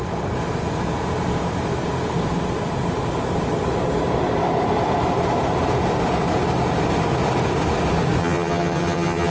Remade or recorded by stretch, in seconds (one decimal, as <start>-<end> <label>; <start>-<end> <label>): 0.0-8.2 recorded; 8.2-9.3 remade

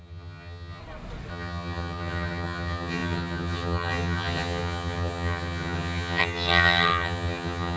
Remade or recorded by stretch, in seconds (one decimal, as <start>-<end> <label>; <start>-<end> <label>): 0.0-0.8 remade; 0.8-1.3 recorded; 1.3-7.8 remade

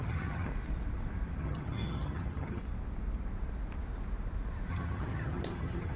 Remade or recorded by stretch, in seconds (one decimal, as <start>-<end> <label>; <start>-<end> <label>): 0.0-0.5 remade; 0.5-1.4 recorded; 1.4-2.6 remade; 2.6-4.7 recorded; 4.7-6.0 remade

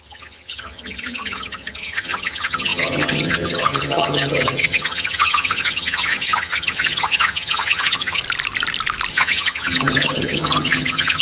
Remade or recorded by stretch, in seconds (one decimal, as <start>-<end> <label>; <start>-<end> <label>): 0.0-8.2 remade; 8.2-9.1 recorded; 9.1-11.2 remade